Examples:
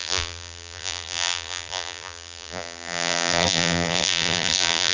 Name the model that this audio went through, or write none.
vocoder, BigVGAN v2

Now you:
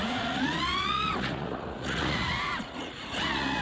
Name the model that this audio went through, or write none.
vocoder, Vocos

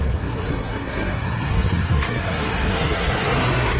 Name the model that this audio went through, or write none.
codec, SNAC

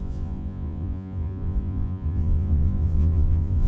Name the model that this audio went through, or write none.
vocoder, Vocos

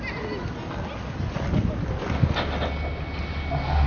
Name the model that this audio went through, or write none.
none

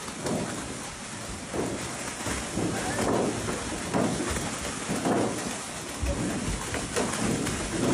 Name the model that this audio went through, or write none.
none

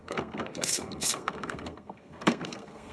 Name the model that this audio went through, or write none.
codec, SNAC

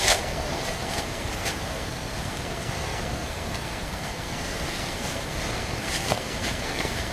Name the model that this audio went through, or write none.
codec, SNAC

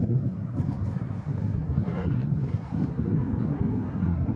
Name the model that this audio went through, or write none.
codec, SNAC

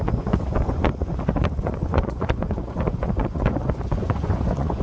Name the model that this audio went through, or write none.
vocoder, Vocos